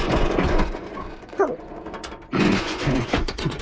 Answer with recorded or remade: remade